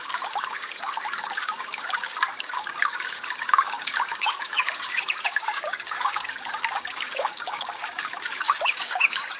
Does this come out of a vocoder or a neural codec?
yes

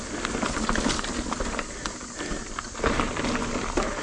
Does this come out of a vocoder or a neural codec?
no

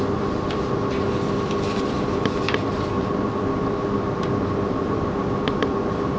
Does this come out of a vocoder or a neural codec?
yes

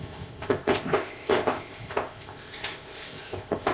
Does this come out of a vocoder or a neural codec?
yes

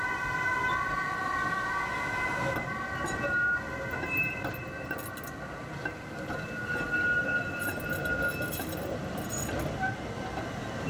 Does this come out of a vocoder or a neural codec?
no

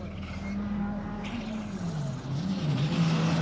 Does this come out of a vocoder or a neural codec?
no